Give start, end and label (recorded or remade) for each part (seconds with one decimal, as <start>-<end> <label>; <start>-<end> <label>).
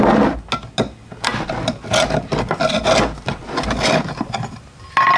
0.0-5.2 recorded